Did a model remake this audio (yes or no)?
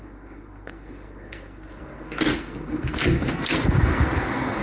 yes